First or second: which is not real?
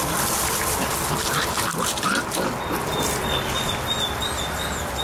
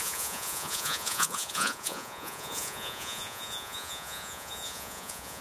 second